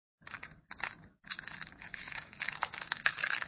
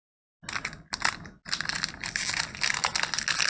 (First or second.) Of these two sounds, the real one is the second